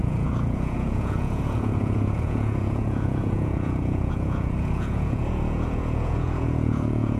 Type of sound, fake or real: fake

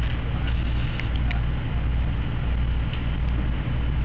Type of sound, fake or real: real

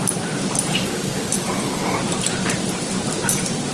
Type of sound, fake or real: fake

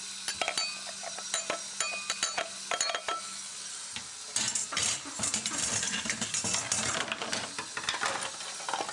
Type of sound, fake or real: real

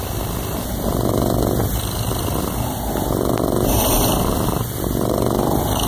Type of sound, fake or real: real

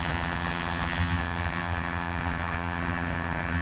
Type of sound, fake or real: fake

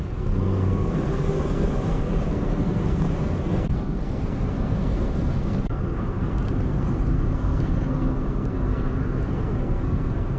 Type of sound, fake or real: fake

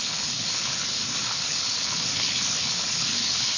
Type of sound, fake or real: fake